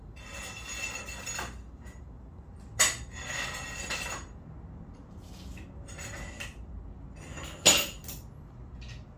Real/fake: real